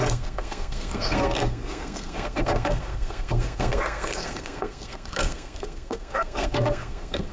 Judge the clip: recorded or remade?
remade